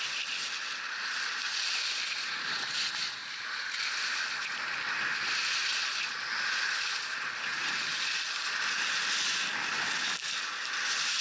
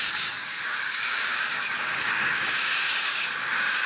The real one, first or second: first